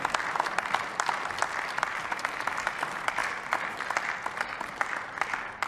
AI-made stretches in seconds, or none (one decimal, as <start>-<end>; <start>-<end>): none